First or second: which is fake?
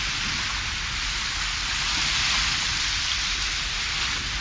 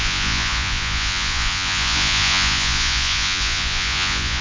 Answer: second